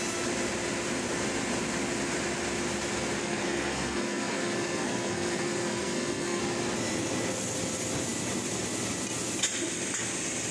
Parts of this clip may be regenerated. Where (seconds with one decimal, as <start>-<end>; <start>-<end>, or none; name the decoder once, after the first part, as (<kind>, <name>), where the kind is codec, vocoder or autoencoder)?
3.2-6.4 (codec, SNAC)